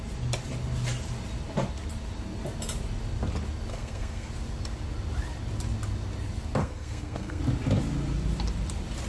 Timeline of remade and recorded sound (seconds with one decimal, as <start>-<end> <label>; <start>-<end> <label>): 0.0-3.7 recorded; 3.7-4.3 remade; 4.3-6.6 recorded; 6.6-7.4 remade; 7.4-9.1 recorded